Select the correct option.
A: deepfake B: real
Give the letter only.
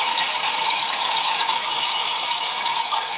A